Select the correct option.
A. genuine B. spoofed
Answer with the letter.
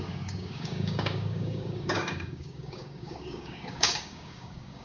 B